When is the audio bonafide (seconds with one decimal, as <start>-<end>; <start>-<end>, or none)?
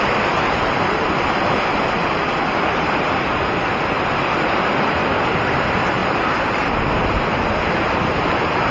0.0-6.0; 7.0-8.7